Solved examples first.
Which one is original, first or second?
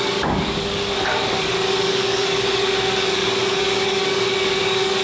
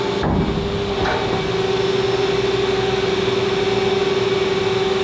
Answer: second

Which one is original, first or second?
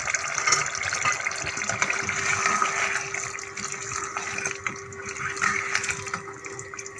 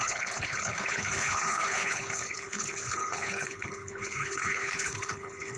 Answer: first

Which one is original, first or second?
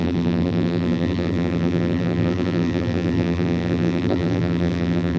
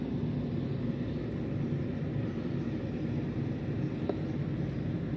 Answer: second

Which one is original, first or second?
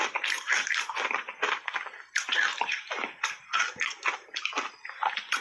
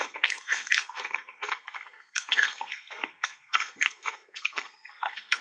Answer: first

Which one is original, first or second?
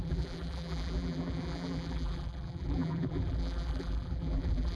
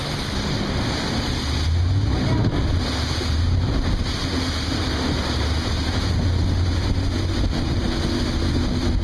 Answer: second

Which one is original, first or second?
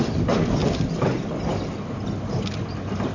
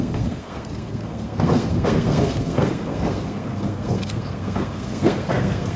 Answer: first